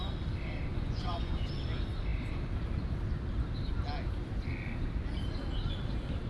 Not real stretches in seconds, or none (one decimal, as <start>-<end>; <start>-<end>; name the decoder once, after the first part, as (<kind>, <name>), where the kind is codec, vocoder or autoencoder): 0.7-1.5 (vocoder, Vocos)